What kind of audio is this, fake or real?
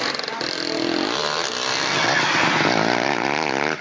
real